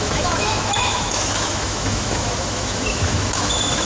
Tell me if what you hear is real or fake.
fake